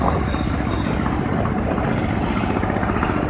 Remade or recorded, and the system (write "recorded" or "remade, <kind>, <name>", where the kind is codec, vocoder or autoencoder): recorded